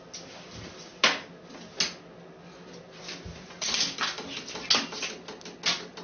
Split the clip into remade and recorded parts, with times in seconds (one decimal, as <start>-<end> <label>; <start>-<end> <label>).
0.0-6.0 recorded

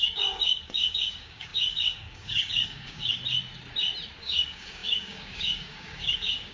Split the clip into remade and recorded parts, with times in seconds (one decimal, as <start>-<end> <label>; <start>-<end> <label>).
0.0-3.2 remade; 3.2-4.2 recorded; 4.2-6.5 remade

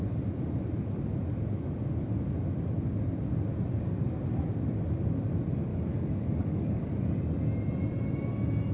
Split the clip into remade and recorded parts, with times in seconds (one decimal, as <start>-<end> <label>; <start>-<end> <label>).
0.0-5.7 recorded; 5.7-6.9 remade; 6.9-8.7 recorded

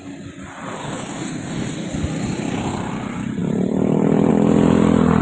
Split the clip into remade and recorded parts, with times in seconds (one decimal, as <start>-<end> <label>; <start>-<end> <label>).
0.0-0.8 recorded; 0.8-1.9 remade; 1.9-5.2 recorded

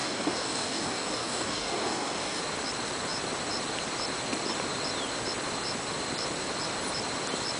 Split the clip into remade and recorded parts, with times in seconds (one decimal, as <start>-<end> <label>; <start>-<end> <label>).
0.0-2.4 remade; 2.4-7.6 recorded

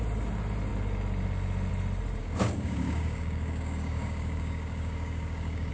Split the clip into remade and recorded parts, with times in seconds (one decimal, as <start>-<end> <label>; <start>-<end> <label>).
0.0-2.2 recorded; 2.2-5.7 remade